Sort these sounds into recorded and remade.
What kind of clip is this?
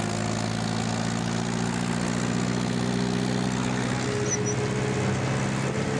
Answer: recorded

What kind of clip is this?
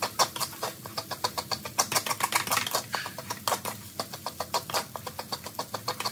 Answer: recorded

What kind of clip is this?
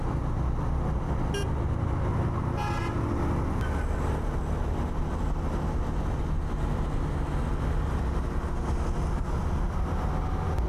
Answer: recorded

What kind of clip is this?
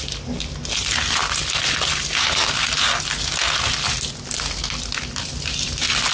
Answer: recorded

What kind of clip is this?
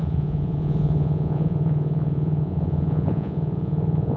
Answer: remade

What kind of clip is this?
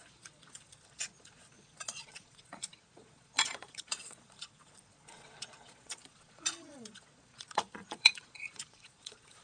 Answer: remade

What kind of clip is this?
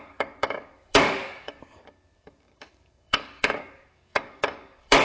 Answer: remade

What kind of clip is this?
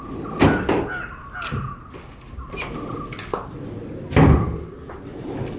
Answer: recorded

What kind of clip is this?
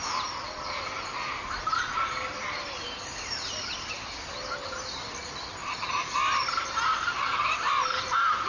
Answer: remade